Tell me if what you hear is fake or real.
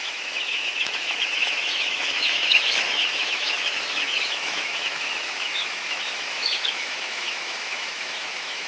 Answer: fake